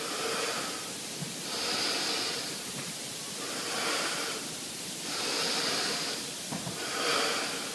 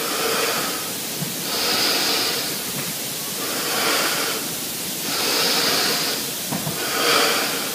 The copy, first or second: first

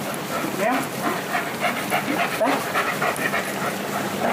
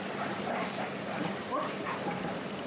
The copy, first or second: second